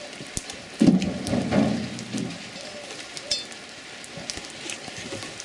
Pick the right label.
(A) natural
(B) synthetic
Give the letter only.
A